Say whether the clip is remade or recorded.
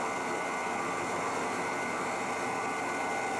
recorded